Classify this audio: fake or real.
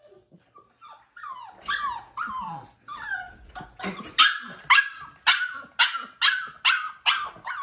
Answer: real